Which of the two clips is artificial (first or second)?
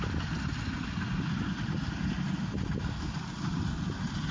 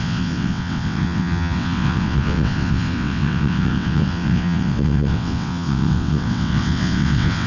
second